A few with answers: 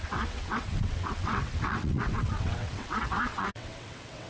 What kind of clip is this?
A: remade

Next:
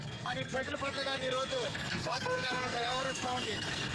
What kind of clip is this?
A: remade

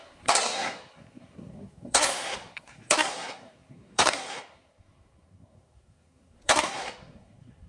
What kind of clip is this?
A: remade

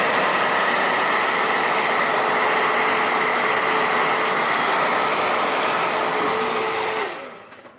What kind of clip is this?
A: recorded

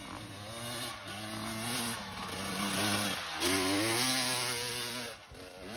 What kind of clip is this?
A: recorded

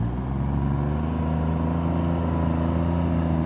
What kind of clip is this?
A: recorded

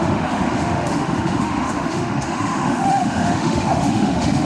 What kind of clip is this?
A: remade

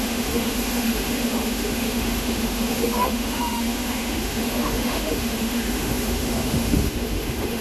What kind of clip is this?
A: remade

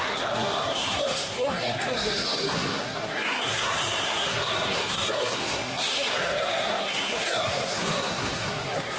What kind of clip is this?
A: remade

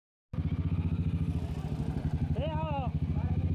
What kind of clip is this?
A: recorded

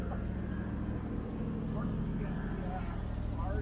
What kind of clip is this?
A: recorded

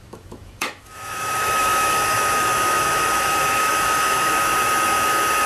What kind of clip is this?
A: remade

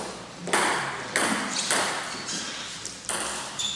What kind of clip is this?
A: recorded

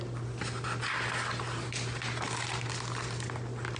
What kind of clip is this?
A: recorded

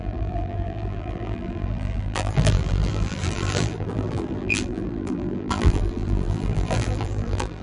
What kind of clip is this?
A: remade